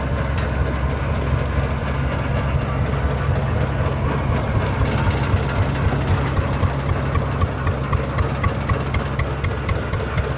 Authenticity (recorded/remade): recorded